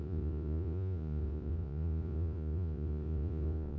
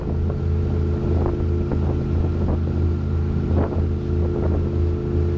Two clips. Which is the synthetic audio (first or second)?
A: first